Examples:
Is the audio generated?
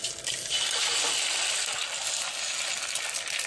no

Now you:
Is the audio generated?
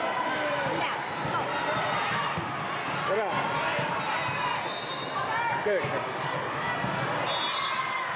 no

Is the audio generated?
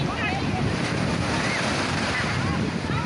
no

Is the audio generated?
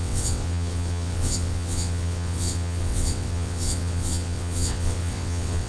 yes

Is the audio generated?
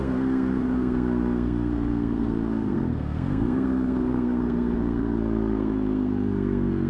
yes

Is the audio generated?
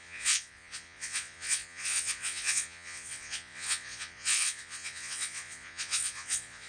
yes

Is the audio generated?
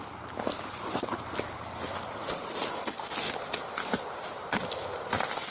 no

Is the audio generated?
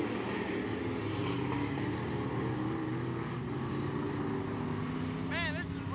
no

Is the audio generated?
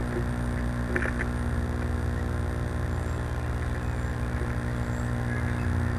no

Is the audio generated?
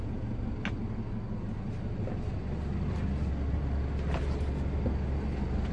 no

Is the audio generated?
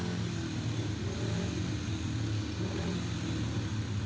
no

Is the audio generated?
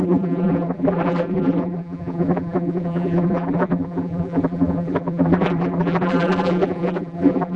yes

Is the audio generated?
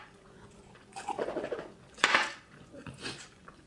yes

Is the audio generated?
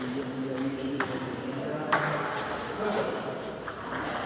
yes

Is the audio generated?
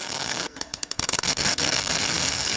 yes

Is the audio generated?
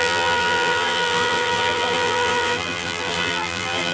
yes